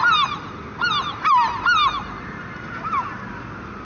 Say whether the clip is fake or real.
real